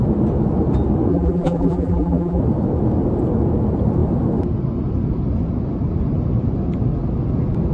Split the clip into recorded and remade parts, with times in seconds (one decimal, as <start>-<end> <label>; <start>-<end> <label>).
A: 0.0-1.1 recorded; 1.1-2.4 remade; 2.4-7.7 recorded